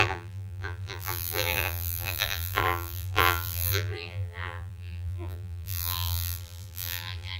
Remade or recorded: remade